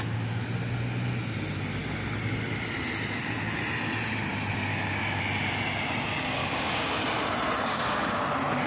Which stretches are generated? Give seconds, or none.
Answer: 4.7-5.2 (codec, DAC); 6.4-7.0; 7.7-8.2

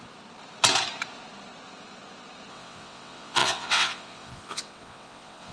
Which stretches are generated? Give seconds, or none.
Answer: 2.5-5.5 (vocoder, WaveNeXt)

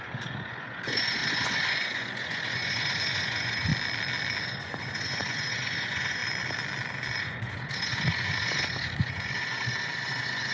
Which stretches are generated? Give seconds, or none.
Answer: 0.0-3.7 (vocoder, Vocos); 4.4-6.2; 7.2-10.5

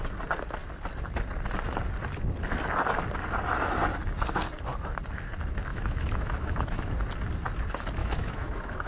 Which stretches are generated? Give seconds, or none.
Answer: 5.7-6.9 (autoencoder, DAC-VAE); 8.0-8.9

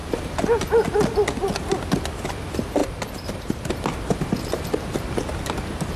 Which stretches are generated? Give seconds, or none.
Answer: 2.8-3.7 (vocoder, BigVGAN v2)

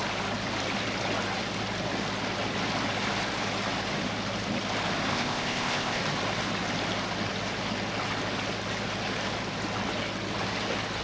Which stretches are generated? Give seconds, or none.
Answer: 5.1-6.0 (codec, ZipCodec)

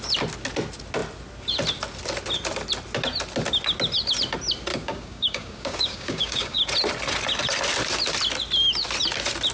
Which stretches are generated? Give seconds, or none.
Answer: 4.7-6.6 (codec, DAC)

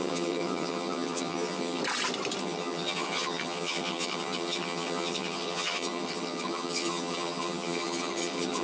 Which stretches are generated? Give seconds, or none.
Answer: 0.0-1.8 (vocoder, HiFi-GAN); 2.4-8.6